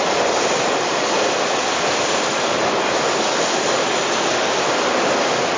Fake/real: real